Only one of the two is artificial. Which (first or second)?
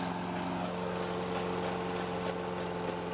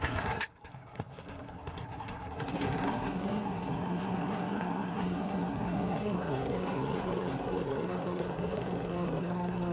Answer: second